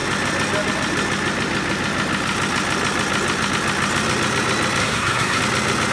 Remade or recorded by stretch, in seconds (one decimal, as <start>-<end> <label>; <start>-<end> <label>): 0.0-4.8 recorded; 4.8-5.4 remade; 5.4-5.9 recorded